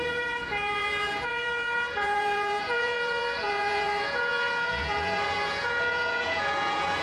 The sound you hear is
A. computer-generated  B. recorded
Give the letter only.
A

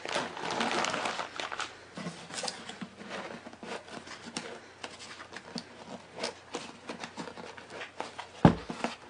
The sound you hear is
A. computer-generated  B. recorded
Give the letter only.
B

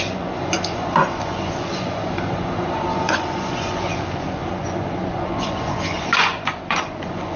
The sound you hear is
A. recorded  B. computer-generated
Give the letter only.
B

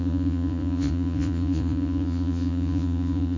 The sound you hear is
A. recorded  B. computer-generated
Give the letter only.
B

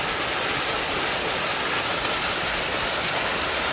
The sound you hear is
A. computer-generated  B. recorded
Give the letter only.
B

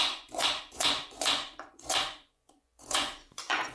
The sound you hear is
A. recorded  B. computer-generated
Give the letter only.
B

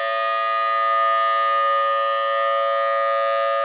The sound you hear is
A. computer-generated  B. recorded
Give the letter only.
B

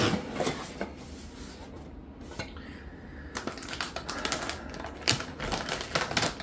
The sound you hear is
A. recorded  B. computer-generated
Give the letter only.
A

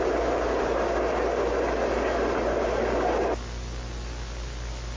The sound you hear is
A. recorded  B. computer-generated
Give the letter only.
A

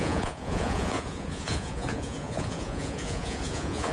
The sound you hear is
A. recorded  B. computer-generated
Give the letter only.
B